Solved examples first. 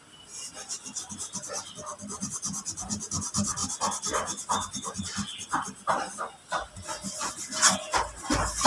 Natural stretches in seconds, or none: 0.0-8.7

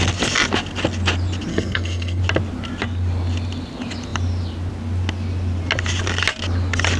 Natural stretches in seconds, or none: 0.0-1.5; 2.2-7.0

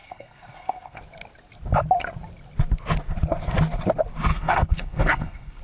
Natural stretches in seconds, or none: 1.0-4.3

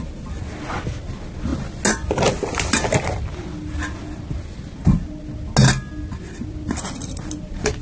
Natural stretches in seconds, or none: 0.0-7.8

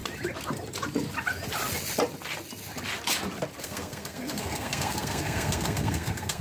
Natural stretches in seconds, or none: 0.0-3.6

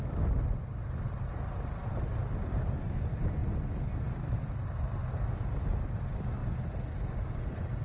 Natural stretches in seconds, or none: 0.0-7.8

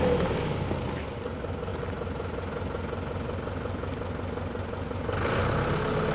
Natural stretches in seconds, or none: 0.0-6.1

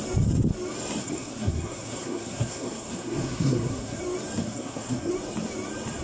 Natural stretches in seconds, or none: 0.0-1.0; 4.0-4.4; 5.1-6.0